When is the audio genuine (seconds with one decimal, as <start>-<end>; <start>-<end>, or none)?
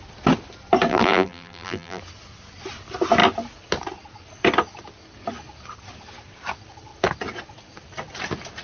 0.0-0.9; 2.0-8.6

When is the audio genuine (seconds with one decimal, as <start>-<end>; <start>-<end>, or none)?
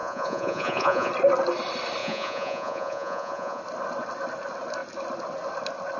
1.1-2.0; 3.6-6.0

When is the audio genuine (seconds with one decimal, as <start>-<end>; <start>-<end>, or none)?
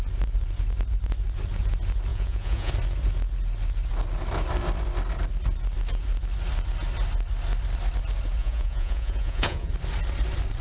0.0-2.1; 2.7-8.4; 9.7-10.6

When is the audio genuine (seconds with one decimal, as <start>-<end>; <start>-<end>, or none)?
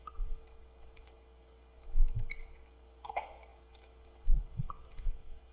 none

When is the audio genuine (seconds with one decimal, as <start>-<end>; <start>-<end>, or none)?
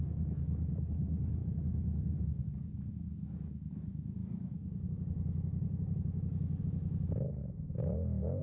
7.4-8.4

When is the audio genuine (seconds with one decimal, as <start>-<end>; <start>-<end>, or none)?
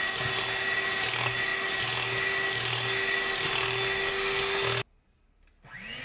0.0-6.0